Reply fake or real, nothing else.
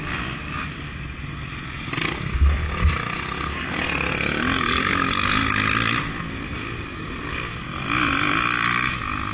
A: real